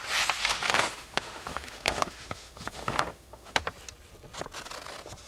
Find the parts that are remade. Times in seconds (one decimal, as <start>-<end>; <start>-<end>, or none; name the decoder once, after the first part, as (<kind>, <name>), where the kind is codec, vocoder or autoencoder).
0.4-3.6 (autoencoder, DAC-VAE)